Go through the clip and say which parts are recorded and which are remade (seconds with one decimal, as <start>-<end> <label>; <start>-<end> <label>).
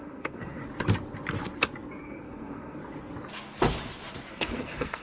0.0-0.6 remade; 0.6-2.0 recorded; 2.0-2.8 remade; 2.8-4.3 recorded; 4.3-5.0 remade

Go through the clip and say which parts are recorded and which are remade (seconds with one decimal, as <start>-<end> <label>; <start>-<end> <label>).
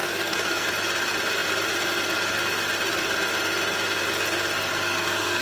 0.0-0.7 remade; 0.7-4.7 recorded; 4.7-5.4 remade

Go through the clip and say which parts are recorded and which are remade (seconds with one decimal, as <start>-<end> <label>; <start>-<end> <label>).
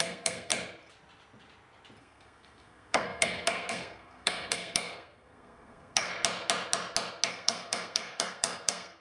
0.0-0.5 remade; 0.5-2.0 recorded; 2.0-6.1 remade; 6.1-7.3 recorded; 7.3-9.0 remade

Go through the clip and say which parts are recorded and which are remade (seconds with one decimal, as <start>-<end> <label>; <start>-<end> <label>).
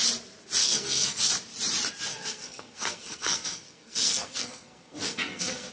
0.0-0.6 recorded; 0.6-1.3 remade; 1.3-2.1 recorded; 2.1-5.7 remade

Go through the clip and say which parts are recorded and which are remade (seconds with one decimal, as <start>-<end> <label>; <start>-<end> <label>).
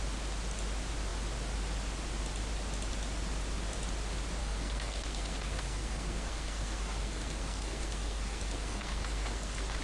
0.0-4.4 recorded; 4.4-9.8 remade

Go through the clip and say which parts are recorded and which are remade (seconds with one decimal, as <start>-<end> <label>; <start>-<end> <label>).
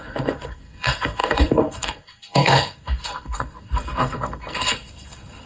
0.0-5.5 remade